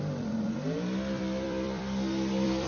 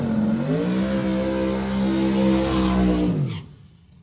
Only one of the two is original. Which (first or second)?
second